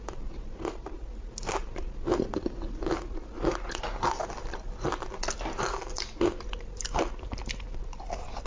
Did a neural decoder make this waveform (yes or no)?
no